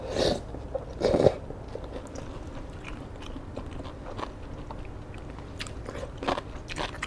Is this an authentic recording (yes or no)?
yes